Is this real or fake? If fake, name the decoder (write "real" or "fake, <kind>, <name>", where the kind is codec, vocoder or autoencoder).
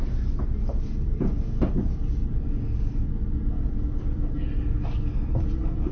real